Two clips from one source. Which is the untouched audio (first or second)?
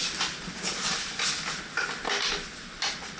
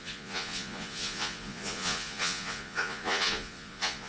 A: first